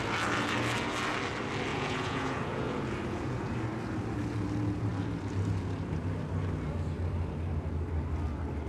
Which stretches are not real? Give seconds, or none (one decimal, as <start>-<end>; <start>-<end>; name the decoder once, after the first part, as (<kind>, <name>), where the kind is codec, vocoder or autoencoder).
1.7-3.5 (vocoder, Vocos)